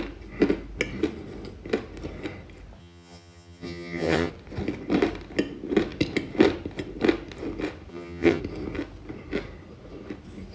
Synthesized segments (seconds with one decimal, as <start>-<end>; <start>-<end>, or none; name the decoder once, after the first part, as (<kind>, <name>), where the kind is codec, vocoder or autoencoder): 2.8-4.3 (vocoder, HiFi-GAN); 7.9-8.4